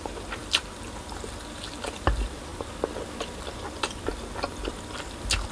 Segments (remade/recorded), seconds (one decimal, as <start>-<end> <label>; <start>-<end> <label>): 0.0-2.5 remade; 2.5-3.2 recorded; 3.2-4.1 remade; 4.1-4.7 recorded; 4.7-5.5 remade